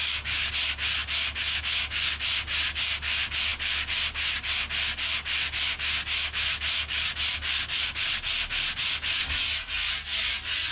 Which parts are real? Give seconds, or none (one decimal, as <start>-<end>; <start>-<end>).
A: 0.5-10.7